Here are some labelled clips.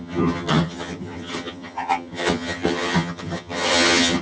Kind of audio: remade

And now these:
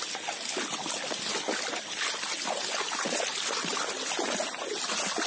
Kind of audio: recorded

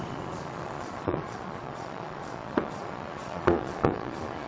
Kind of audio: remade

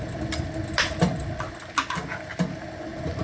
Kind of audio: recorded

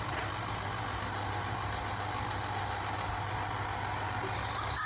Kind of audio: recorded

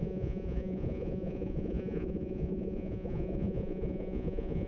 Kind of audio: remade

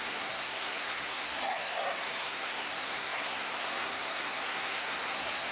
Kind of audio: remade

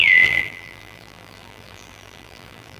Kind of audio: remade